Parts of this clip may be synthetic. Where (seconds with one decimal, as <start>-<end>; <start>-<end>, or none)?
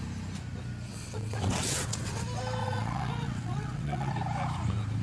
0.9-2.2; 2.6-4.1